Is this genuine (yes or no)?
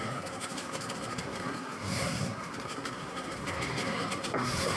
no